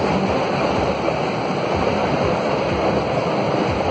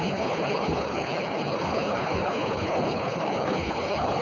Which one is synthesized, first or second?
second